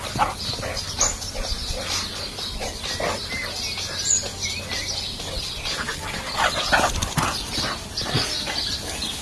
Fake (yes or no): no